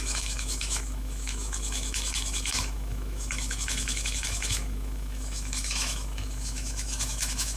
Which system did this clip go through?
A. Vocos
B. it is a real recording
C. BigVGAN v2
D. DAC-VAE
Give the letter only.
D